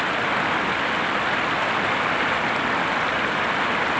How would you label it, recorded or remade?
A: recorded